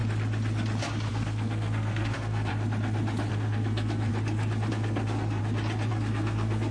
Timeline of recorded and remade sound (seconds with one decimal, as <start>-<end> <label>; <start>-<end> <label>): 0.0-1.1 recorded; 1.1-2.5 remade; 2.5-3.3 recorded; 3.3-4.1 remade; 4.1-4.7 recorded; 4.7-5.4 remade; 5.4-5.9 recorded; 5.9-6.7 remade